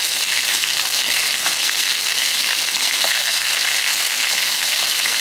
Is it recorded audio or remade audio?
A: remade